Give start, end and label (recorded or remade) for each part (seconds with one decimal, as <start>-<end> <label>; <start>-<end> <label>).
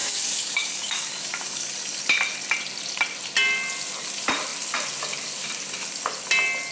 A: 0.0-1.7 remade; 1.7-6.7 recorded